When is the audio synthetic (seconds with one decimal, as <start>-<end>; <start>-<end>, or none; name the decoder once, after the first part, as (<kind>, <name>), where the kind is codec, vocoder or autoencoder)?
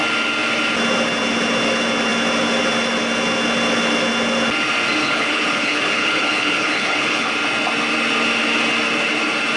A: 5.0-7.3 (codec, HILCodec)